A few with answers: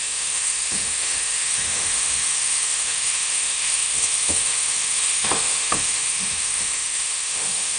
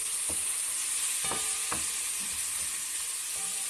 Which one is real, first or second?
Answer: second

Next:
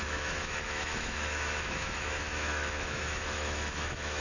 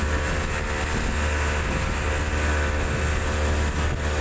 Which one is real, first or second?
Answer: second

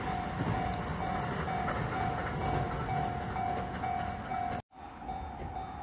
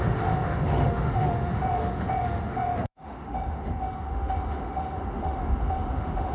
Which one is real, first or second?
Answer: first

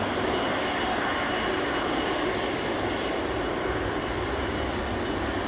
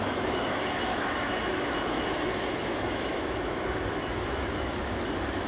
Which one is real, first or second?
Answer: first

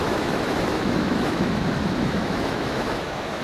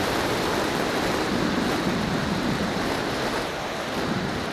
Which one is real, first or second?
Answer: second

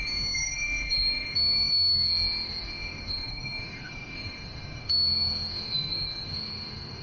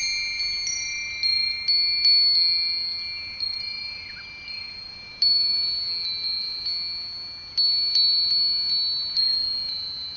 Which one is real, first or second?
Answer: second